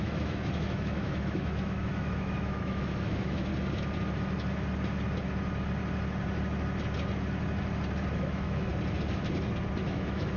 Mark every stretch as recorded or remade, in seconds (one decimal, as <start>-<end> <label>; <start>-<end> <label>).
0.0-3.5 remade; 3.5-8.1 recorded; 8.1-8.7 remade; 8.7-9.8 recorded; 9.8-10.4 remade